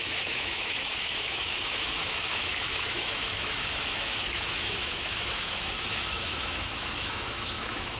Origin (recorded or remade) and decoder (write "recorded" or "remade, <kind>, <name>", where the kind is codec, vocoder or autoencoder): remade, autoencoder, DAC-VAE